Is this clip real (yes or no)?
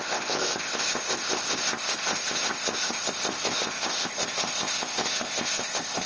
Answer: no